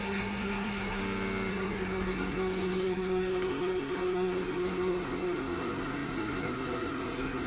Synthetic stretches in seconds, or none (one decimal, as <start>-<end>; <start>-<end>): 0.0-1.0; 1.5-7.5